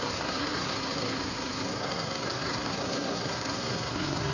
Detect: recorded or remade remade